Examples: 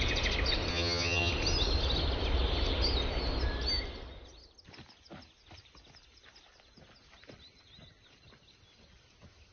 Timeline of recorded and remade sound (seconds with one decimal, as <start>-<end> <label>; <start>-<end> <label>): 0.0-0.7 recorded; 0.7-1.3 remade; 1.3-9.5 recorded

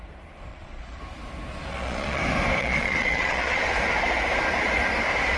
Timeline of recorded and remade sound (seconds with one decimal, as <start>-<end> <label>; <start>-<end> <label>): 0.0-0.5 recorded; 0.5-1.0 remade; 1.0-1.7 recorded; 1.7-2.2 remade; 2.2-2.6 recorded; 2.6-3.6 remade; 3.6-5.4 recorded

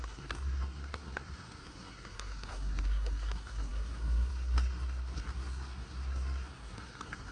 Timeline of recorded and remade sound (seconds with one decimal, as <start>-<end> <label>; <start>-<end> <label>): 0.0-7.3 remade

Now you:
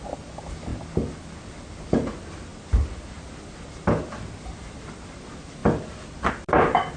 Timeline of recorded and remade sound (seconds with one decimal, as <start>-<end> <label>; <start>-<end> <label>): 0.0-7.0 recorded

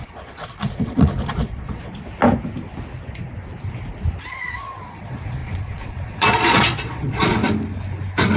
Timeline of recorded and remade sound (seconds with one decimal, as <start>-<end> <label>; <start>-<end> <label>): 0.0-1.9 remade; 1.9-4.4 recorded; 4.4-7.4 remade; 7.4-8.4 recorded

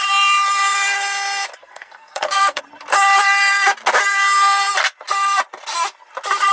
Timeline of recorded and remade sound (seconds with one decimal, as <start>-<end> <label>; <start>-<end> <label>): 0.0-1.6 recorded; 1.6-2.6 remade; 2.6-6.5 recorded

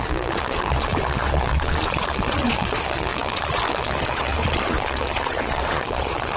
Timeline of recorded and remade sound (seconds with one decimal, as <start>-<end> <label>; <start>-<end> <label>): 0.0-6.4 remade

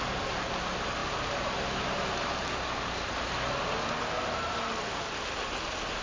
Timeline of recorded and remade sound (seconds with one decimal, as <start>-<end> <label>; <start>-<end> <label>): 0.0-1.0 recorded; 1.0-2.5 remade; 2.5-6.0 recorded